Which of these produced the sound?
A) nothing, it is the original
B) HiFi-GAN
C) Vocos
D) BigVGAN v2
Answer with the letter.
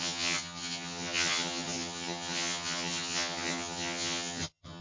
B